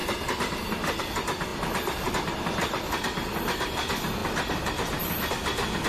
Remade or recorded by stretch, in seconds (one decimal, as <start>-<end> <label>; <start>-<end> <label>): 0.0-5.9 recorded